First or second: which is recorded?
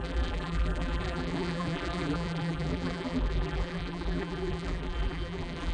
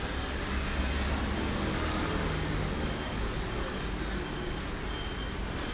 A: second